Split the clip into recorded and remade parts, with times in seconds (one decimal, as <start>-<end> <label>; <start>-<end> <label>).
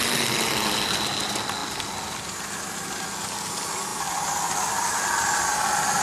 0.0-6.0 recorded